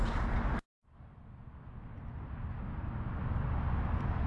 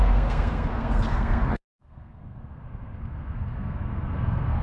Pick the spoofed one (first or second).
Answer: second